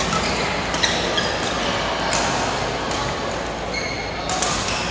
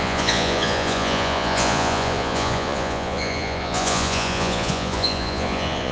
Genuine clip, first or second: first